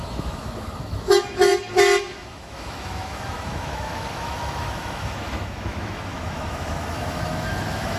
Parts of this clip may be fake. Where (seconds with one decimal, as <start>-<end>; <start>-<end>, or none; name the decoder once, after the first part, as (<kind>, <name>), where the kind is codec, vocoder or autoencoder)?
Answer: 0.0-8.0 (autoencoder, DAC-VAE)